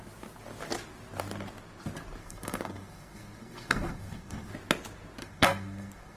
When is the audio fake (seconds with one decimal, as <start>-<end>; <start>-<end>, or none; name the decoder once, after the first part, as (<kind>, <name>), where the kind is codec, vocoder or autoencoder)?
2.2-4.5 (codec, SNAC); 5.2-6.2